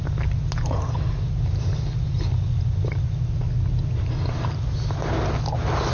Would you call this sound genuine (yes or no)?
yes